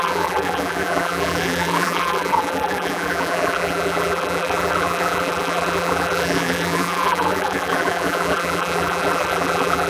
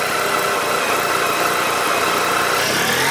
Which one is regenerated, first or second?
first